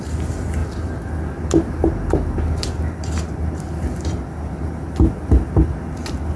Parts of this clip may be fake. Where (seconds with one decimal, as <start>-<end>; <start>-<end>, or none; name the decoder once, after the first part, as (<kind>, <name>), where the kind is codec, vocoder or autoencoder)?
none